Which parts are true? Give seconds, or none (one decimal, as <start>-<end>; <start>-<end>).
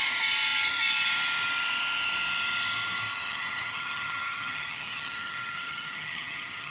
0.0-3.1